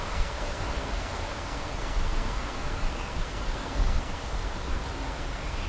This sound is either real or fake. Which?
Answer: fake